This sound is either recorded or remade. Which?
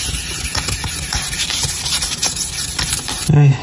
remade